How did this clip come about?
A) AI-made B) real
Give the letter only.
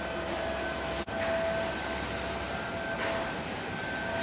B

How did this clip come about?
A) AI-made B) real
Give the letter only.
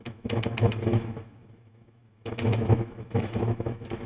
A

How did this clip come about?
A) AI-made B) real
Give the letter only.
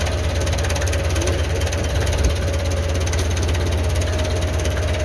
B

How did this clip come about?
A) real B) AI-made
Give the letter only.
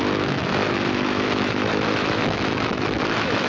B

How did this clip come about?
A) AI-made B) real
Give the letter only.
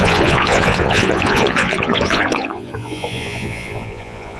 A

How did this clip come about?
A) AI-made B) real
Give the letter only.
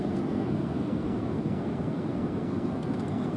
A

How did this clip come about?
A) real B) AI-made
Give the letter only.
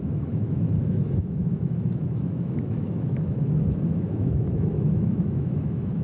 B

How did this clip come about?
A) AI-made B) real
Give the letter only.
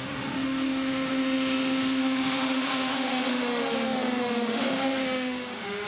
A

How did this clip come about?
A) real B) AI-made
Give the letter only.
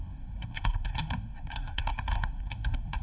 B